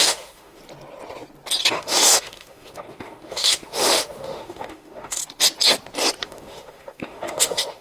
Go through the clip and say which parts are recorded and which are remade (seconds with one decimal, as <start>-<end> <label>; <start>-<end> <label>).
0.0-0.6 remade; 0.6-1.7 recorded; 1.7-5.2 remade; 5.2-6.2 recorded; 6.2-7.8 remade